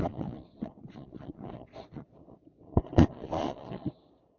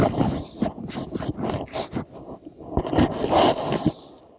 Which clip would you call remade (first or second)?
first